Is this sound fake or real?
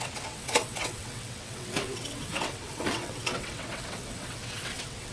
fake